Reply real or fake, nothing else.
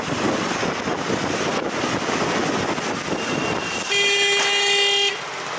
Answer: real